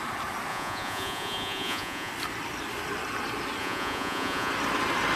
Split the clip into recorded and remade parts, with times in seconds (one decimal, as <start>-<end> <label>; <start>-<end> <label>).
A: 0.0-0.5 recorded; 0.5-2.1 remade; 2.1-3.6 recorded; 3.6-4.5 remade; 4.5-5.2 recorded